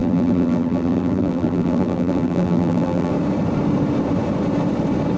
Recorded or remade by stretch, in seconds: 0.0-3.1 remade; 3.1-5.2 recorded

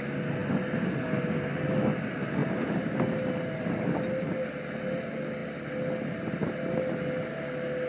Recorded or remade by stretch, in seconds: 0.0-7.9 recorded